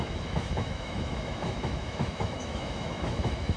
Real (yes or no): no